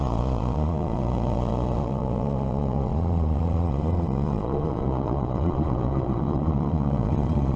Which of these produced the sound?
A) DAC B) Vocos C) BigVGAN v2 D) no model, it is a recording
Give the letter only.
B